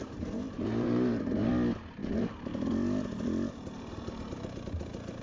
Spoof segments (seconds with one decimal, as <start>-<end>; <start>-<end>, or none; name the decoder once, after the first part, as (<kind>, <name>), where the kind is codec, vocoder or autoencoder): 0.0-1.5 (vocoder, BigVGAN v2)